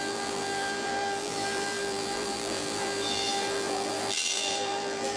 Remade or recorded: remade